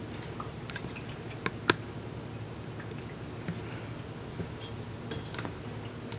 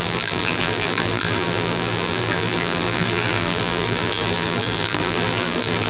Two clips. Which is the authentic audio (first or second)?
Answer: first